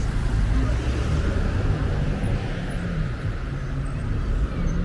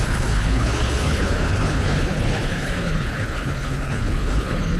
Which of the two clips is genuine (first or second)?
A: first